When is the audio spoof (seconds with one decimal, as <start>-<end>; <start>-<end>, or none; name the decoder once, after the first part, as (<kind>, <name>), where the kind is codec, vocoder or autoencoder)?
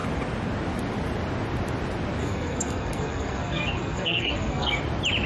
2.2-4.8 (codec, SNAC)